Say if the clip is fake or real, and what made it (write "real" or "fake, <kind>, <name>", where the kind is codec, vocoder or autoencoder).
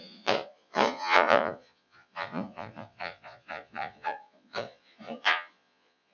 fake, vocoder, Vocos